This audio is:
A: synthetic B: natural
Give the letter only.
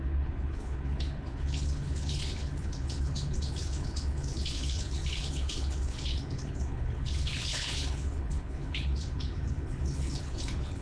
A